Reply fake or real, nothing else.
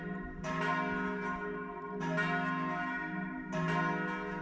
real